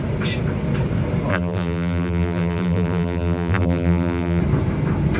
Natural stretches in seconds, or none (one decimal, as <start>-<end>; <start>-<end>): 0.0-1.3; 4.4-5.2